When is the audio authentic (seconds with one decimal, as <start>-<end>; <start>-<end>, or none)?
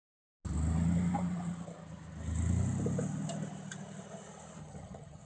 0.0-4.6